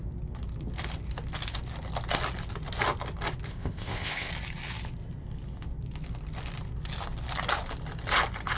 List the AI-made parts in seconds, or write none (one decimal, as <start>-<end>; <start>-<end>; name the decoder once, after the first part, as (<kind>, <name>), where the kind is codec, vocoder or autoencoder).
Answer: 3.5-4.3 (codec, ZipCodec)